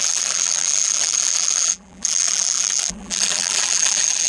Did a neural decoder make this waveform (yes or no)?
yes